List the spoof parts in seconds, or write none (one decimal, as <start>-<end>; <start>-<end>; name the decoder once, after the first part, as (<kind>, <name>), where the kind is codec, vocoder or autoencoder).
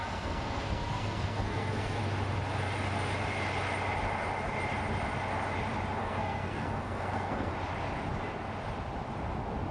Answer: 0.0-2.0 (codec, SNAC); 6.0-7.5